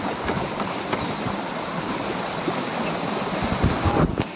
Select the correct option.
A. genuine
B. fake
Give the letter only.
A